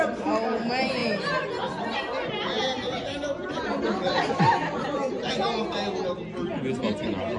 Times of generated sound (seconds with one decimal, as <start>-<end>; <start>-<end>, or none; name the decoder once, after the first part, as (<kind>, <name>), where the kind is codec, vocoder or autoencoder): none

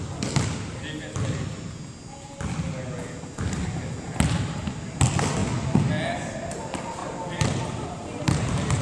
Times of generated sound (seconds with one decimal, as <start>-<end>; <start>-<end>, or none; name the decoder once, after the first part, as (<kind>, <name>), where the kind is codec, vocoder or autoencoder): 7.0-8.8 (vocoder, BigVGAN v2)

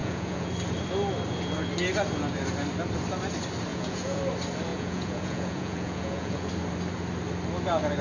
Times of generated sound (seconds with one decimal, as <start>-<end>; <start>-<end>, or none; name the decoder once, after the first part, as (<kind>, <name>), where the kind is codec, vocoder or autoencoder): 0.0-0.5 (vocoder, Vocos); 3.7-4.2; 4.7-6.5

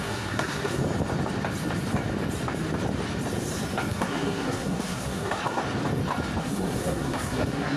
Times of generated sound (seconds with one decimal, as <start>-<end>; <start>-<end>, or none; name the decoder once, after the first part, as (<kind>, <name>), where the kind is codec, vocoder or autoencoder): 0.0-0.8 (codec, SNAC); 3.9-5.6; 6.4-7.8

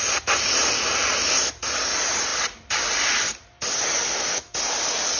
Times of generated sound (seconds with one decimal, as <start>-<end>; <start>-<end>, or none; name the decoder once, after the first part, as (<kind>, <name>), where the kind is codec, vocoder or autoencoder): none

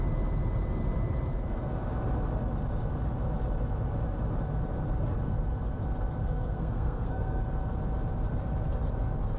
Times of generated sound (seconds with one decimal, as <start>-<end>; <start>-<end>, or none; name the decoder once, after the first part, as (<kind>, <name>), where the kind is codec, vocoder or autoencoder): 6.2-7.4 (codec, SNAC)

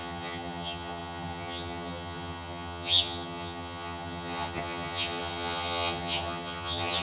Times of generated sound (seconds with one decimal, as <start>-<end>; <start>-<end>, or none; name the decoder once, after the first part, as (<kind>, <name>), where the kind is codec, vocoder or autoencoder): 0.0-7.0 (vocoder, HiFi-GAN)